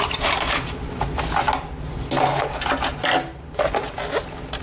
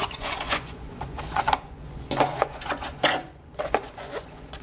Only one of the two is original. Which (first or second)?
first